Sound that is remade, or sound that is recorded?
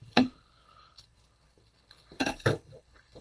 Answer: remade